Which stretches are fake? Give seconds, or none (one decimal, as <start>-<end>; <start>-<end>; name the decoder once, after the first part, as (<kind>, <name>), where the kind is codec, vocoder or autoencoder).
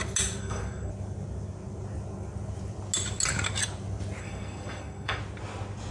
0.4-0.9 (codec, SNAC); 4.2-5.2